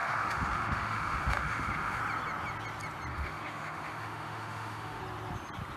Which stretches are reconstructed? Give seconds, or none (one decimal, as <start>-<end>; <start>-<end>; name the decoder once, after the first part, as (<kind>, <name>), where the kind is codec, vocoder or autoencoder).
0.0-2.0 (autoencoder, DAC-VAE); 3.1-5.0